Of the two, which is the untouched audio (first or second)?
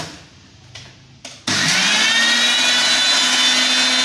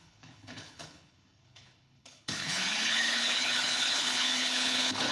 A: first